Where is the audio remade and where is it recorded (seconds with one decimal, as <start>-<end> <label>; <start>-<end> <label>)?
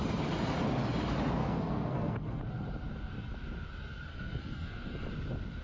0.0-1.4 recorded; 1.4-2.4 remade; 2.4-4.1 recorded; 4.1-5.1 remade; 5.1-5.6 recorded